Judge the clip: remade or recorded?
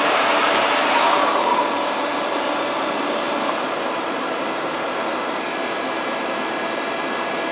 remade